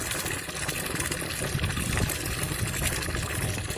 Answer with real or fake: real